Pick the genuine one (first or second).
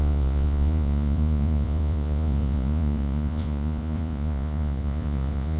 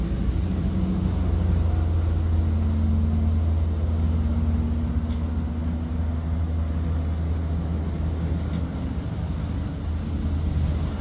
second